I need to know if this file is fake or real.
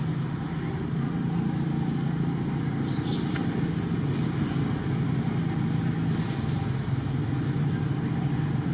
real